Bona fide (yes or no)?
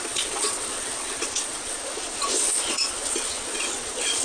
no